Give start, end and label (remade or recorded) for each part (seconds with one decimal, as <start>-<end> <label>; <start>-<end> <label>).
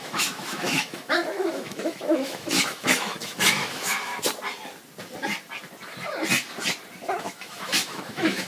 0.0-4.1 remade; 4.1-7.2 recorded; 7.2-8.5 remade